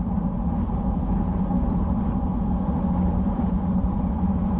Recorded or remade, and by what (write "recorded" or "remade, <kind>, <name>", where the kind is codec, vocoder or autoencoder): recorded